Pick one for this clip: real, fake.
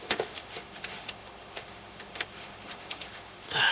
fake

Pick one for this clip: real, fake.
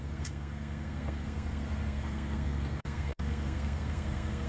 fake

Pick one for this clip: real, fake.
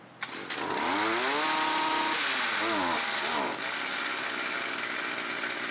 real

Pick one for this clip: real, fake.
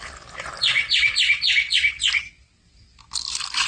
real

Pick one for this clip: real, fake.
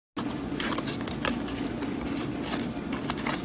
real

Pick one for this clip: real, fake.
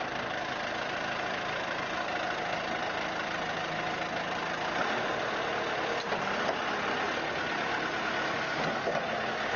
real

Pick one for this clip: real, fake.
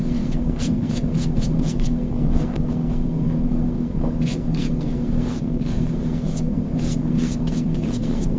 fake